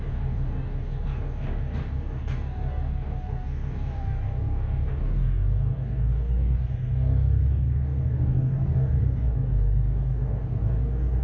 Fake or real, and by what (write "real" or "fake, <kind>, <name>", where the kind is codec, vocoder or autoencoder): fake, codec, DAC